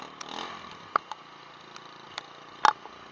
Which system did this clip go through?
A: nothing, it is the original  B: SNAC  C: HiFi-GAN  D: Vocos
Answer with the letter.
A